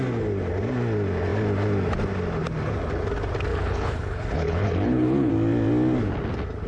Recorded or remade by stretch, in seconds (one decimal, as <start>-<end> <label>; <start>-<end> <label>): 0.0-3.5 recorded; 3.5-5.3 remade; 5.3-6.7 recorded